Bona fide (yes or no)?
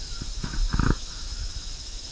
no